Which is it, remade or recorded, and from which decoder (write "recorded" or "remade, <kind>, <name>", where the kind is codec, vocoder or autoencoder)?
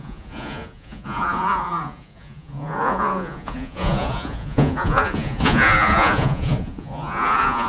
remade, vocoder, Vocos